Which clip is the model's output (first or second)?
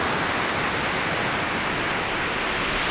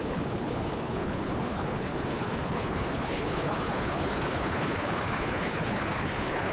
second